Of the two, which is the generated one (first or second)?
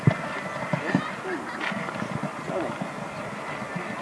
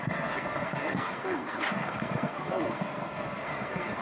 second